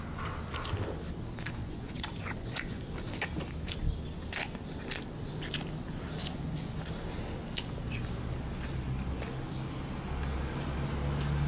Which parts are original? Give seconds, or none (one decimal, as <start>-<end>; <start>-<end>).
0.0-1.6; 2.8-6.2; 6.8-11.5